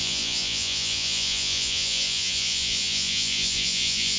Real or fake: fake